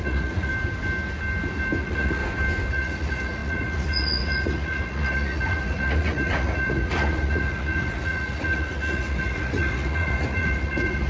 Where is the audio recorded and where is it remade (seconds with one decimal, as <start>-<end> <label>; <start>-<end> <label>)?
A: 0.0-0.5 remade; 0.5-1.8 recorded; 1.8-2.2 remade; 2.2-2.7 recorded; 2.7-11.1 remade